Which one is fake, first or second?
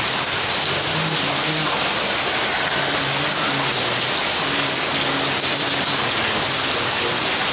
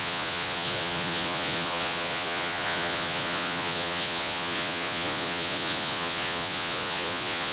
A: second